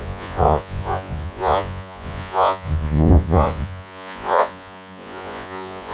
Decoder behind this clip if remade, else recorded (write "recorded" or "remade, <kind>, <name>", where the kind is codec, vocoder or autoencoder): remade, vocoder, Vocos